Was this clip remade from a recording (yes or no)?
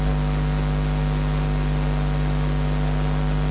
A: no